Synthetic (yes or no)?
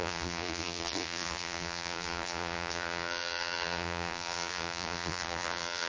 yes